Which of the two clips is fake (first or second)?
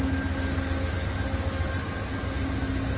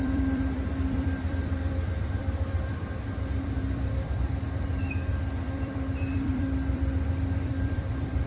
second